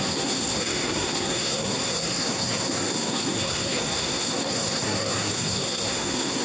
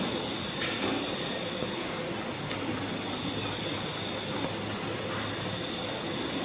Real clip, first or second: second